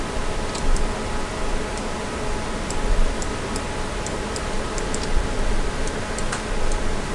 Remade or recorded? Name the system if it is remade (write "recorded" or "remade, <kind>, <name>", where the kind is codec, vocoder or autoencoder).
recorded